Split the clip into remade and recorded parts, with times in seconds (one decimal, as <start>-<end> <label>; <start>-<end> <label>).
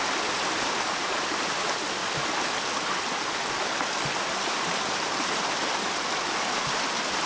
0.0-7.3 recorded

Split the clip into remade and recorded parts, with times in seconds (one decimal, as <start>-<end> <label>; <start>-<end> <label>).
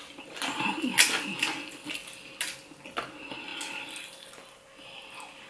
0.0-5.5 recorded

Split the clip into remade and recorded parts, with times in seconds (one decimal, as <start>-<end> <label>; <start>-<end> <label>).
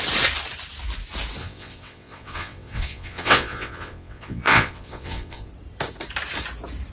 0.0-1.4 recorded; 1.4-5.5 remade; 5.5-6.9 recorded